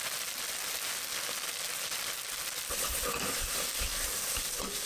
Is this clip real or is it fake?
real